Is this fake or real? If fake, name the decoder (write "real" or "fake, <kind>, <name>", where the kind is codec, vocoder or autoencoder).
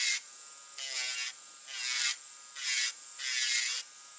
real